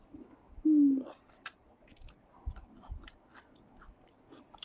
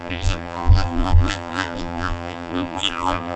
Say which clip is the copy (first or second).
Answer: second